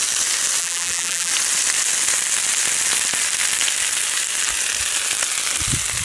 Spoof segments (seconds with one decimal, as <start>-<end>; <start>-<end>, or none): 0.6-1.3